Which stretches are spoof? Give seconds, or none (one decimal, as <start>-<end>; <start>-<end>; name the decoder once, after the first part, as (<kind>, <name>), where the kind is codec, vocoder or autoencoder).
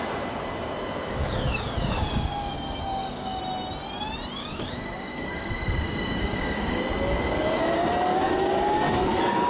1.2-3.4 (codec, DAC); 4.4-6.8; 8.1-9.0